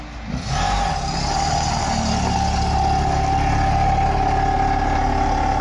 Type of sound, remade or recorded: recorded